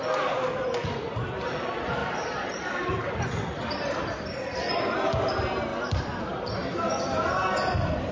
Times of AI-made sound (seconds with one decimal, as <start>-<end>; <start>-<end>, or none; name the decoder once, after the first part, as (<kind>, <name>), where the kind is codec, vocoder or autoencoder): 2.0-4.7 (vocoder, BigVGAN v2)